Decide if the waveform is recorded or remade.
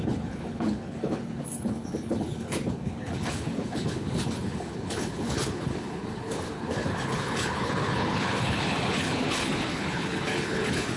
remade